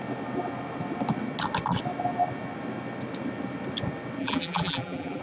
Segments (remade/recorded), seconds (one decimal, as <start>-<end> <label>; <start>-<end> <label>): 0.0-4.2 recorded; 4.2-5.2 remade

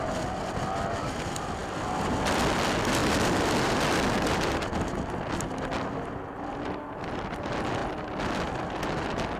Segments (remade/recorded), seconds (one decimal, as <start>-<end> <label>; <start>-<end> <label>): 0.0-9.4 recorded

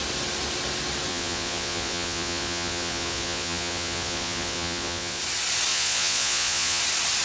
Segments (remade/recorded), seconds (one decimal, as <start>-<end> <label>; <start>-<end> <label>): 0.0-1.1 recorded; 1.1-5.2 remade; 5.2-5.7 recorded; 5.7-6.8 remade; 6.8-7.2 recorded

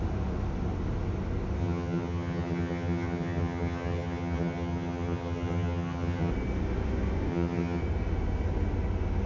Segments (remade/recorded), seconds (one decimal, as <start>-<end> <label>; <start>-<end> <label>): 0.0-1.6 recorded; 1.6-6.3 remade; 6.3-7.3 recorded; 7.3-7.8 remade; 7.8-9.3 recorded

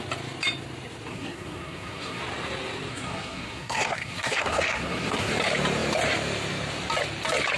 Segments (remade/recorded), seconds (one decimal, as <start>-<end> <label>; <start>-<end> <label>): 0.0-1.1 recorded; 1.1-2.2 remade; 2.2-2.9 recorded; 2.9-5.3 remade; 5.3-7.6 recorded

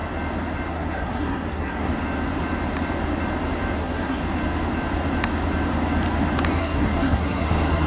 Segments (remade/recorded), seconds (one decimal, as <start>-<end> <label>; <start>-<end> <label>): 0.0-0.7 recorded; 0.7-1.9 remade; 1.9-3.8 recorded; 3.8-4.2 remade; 4.2-6.6 recorded; 6.6-7.9 remade